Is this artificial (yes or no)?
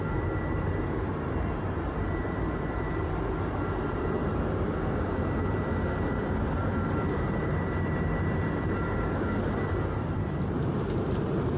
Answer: yes